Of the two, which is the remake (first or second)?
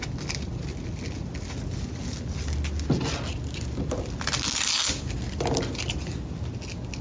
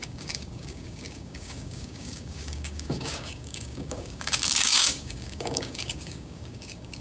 second